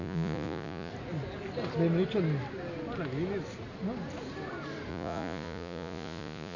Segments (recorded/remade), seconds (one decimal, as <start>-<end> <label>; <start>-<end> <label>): 0.0-0.9 remade; 0.9-4.9 recorded; 4.9-6.6 remade